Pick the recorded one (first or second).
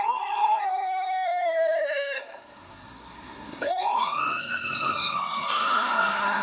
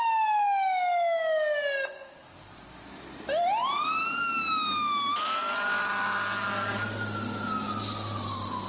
second